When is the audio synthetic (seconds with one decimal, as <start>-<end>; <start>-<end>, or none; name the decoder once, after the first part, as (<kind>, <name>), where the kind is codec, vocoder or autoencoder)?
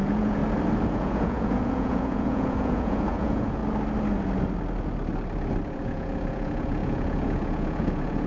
0.0-0.4 (vocoder, Vocos); 0.9-3.6; 5.7-8.3